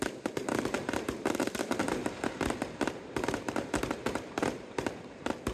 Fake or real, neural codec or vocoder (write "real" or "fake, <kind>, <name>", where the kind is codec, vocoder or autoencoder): fake, vocoder, BigVGAN v2